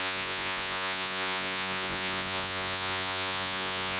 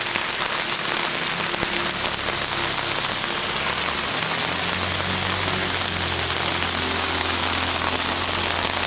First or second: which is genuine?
second